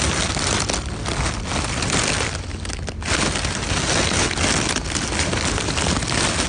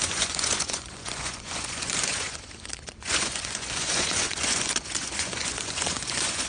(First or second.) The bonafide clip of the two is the first